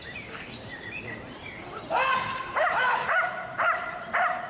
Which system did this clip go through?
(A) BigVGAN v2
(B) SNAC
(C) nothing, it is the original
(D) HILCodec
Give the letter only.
A